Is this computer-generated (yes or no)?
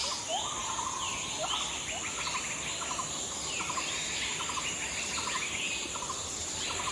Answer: no